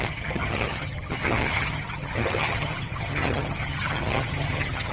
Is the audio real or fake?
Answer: fake